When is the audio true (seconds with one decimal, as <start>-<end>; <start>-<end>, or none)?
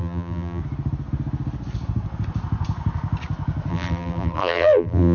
0.6-3.7